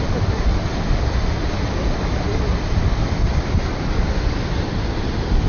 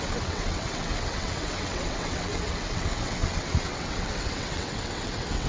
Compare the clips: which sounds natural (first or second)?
first